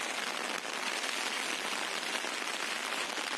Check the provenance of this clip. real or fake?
real